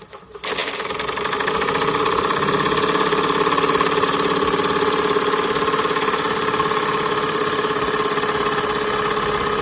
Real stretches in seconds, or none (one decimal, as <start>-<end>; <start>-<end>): 0.0-9.6